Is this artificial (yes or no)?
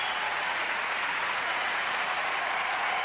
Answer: yes